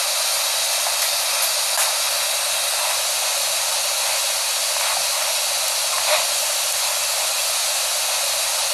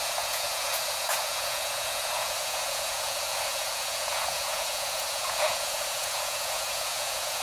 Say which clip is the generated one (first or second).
second